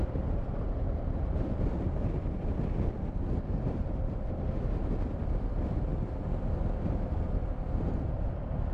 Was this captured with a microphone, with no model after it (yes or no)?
yes